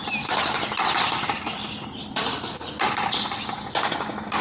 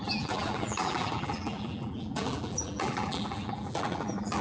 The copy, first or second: second